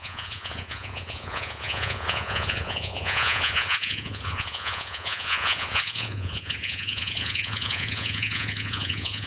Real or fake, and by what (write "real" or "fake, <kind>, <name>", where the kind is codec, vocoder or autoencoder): fake, vocoder, Vocos